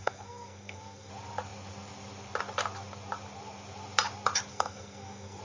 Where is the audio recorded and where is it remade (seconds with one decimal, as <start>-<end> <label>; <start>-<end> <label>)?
0.0-1.1 remade; 1.1-4.5 recorded; 4.5-5.4 remade